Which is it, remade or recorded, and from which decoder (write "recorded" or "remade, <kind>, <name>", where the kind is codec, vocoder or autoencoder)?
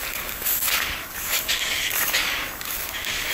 remade, codec, DAC